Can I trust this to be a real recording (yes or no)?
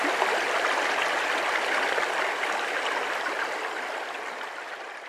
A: yes